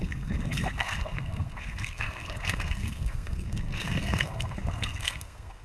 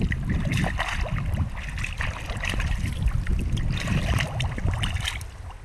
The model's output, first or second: first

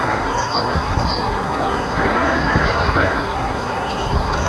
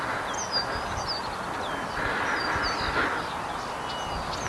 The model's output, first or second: first